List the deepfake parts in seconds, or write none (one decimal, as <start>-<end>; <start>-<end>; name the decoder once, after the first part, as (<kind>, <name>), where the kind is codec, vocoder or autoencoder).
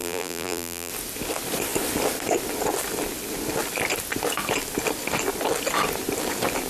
0.0-0.9 (vocoder, BigVGAN v2)